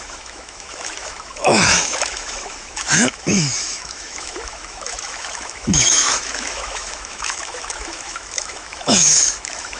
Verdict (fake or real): fake